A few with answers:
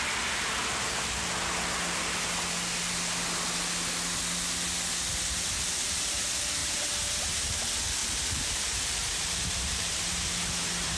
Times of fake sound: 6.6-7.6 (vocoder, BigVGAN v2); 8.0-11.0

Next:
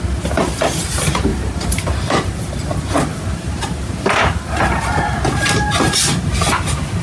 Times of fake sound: 1.3-2.5 (vocoder, BigVGAN v2); 3.1-4.8

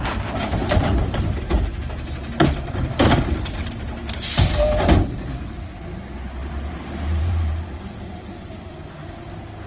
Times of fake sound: 0.6-1.2 (vocoder, BigVGAN v2); 4.0-5.6; 6.4-8.7

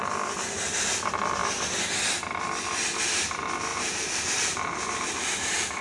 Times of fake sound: 3.7-5.8 (vocoder, BigVGAN v2)

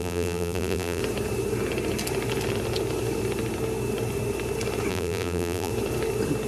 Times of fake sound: 0.0-1.0 (vocoder, BigVGAN v2); 4.9-5.7

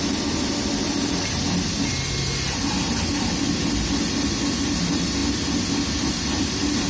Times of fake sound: 0.0-5.2 (vocoder, BigVGAN v2); 6.1-6.9

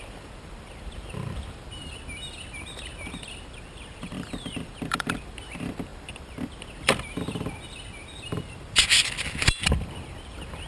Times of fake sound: 0.0-10.7 (vocoder, BigVGAN v2)

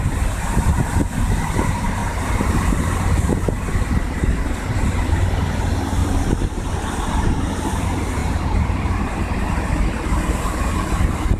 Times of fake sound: 2.0-2.9 (vocoder, BigVGAN v2); 6.0-6.7; 8.2-9.2